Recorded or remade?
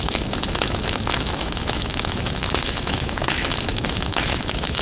remade